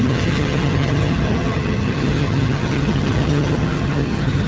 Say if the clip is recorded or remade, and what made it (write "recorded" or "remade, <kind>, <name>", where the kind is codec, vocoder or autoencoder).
remade, vocoder, HiFi-GAN